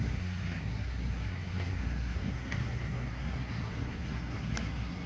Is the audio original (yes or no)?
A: no